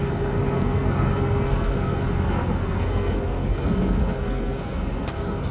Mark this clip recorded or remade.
remade